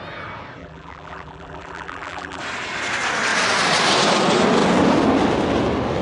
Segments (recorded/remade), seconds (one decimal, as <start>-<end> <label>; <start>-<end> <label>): 0.0-0.6 recorded; 0.6-2.4 remade; 2.4-6.0 recorded

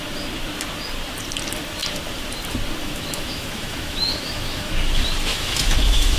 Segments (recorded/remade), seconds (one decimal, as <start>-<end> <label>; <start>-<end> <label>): 0.0-2.8 recorded; 2.8-4.7 remade; 4.7-5.3 recorded; 5.3-6.2 remade

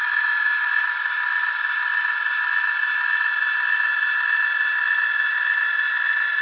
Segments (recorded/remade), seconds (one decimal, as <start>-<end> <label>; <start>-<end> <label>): 0.0-6.4 recorded

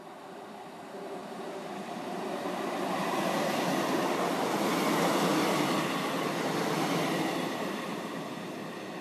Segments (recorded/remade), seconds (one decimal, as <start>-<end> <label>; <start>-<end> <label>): 0.0-9.0 recorded

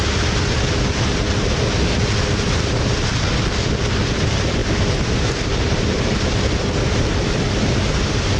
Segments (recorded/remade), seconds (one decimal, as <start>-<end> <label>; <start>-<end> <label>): 0.0-3.8 recorded; 3.8-8.4 remade

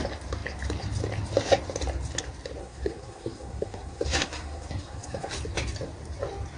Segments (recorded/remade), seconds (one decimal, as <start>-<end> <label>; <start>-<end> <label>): 0.0-2.6 recorded; 2.6-5.3 remade; 5.3-6.6 recorded